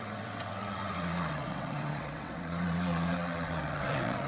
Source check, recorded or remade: remade